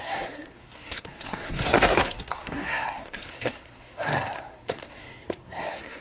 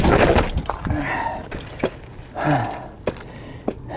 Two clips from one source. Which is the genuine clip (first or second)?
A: second